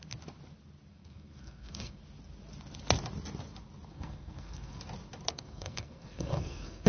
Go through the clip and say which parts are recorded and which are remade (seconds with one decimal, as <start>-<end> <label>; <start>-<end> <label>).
0.0-0.9 recorded; 0.9-2.0 remade; 2.0-3.9 recorded; 3.9-4.8 remade; 4.8-5.3 recorded; 5.3-6.9 remade